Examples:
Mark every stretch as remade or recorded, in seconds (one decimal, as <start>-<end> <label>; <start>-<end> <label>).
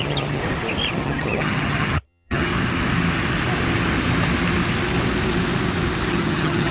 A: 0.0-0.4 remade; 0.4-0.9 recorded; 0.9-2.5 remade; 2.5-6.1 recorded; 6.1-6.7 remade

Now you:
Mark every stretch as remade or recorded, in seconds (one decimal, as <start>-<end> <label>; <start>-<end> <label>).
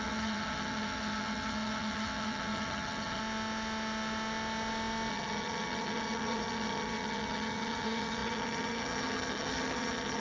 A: 0.0-3.2 remade; 3.2-5.1 recorded; 5.1-10.2 remade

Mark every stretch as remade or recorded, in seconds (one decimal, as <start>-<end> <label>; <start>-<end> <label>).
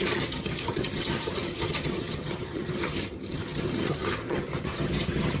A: 0.0-5.4 remade